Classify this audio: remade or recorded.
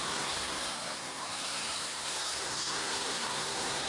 remade